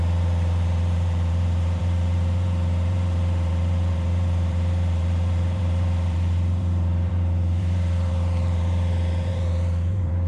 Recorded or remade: remade